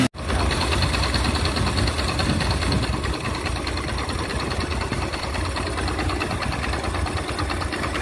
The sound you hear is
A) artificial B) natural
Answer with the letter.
B